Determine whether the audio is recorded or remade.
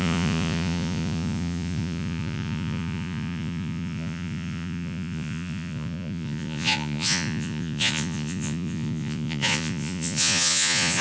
remade